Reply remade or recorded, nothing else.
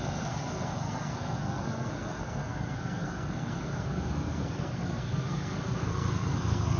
remade